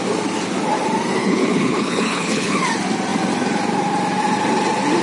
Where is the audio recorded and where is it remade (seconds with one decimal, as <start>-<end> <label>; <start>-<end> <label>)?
0.0-1.2 recorded; 1.2-2.6 remade; 2.6-5.0 recorded